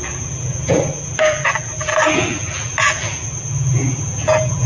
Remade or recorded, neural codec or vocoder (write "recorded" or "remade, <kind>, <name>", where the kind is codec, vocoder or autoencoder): remade, vocoder, BigVGAN v2